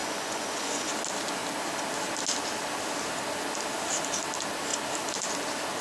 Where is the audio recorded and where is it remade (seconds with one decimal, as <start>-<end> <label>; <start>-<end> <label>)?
0.0-0.9 remade; 0.9-5.8 recorded